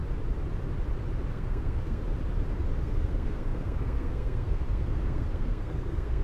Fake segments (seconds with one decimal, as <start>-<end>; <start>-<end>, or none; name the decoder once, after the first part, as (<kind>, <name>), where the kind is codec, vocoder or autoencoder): 1.3-2.0 (codec, SNAC); 2.8-6.2

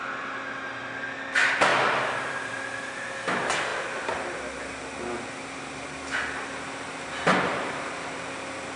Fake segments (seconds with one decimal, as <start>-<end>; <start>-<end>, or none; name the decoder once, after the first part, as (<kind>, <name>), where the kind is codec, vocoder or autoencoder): none

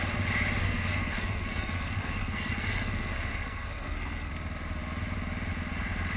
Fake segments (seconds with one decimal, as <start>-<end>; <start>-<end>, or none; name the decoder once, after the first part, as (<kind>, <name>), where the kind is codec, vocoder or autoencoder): 0.6-4.3 (codec, SNAC)

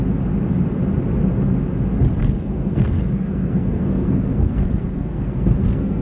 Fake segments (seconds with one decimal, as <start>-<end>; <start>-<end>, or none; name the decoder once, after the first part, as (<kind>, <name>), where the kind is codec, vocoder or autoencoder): 2.2-6.0 (codec, SNAC)